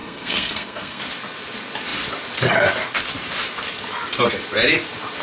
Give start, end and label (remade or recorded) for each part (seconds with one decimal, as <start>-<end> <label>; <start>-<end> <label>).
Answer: 0.0-1.0 remade; 1.0-5.2 recorded